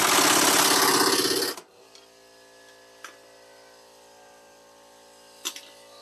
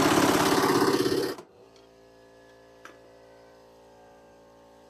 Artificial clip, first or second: second